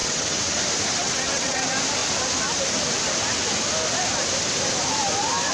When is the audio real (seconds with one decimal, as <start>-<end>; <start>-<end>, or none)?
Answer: 0.6-1.0; 1.6-5.5